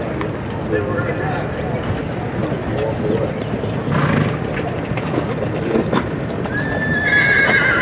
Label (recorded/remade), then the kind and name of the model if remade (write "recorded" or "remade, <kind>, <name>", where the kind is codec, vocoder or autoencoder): recorded